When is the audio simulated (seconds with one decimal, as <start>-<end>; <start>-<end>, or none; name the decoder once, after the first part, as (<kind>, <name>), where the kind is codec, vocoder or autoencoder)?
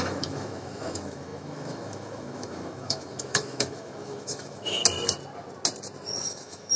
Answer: 0.0-4.8 (autoencoder, DAC-VAE); 6.2-6.8